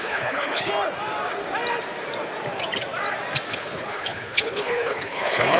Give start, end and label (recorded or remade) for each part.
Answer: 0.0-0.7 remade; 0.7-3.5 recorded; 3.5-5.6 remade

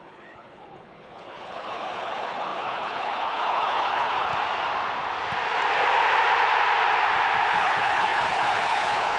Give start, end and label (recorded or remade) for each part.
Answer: 0.0-4.3 remade; 4.3-7.5 recorded; 7.5-9.2 remade

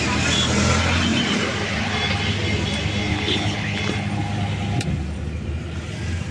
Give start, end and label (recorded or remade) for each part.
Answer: 0.0-3.1 recorded; 3.1-3.8 remade; 3.8-6.3 recorded

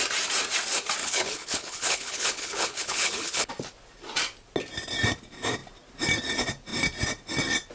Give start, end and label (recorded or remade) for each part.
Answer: 0.0-1.0 recorded; 1.0-3.5 remade; 3.5-7.7 recorded

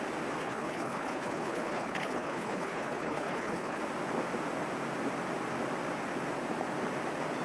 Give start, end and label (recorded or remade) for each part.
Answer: 0.0-0.4 recorded; 0.4-3.8 remade; 3.8-7.4 recorded

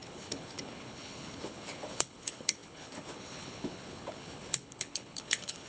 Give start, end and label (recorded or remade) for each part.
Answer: 0.0-5.7 remade

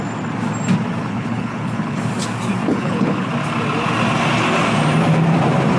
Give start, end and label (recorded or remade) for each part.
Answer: 0.0-1.0 recorded; 1.0-2.1 remade; 2.1-2.7 recorded; 2.7-3.3 remade; 3.3-5.8 recorded

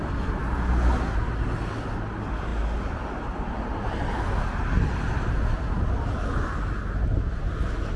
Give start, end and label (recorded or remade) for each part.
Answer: 0.0-8.0 recorded